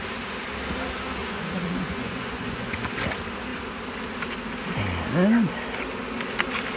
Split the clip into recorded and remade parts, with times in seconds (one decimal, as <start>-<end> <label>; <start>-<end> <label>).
0.0-1.2 recorded; 1.2-2.8 remade; 2.8-6.8 recorded